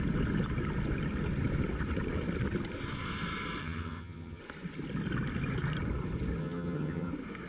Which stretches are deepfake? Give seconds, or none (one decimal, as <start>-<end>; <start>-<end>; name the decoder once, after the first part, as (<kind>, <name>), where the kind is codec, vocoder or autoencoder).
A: 3.6-4.4 (vocoder, HiFi-GAN); 6.4-7.1